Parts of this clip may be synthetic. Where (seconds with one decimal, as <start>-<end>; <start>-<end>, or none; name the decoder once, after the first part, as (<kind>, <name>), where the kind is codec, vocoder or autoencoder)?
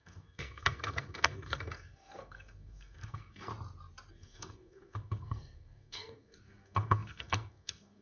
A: 0.0-3.5 (codec, SNAC); 4.1-8.0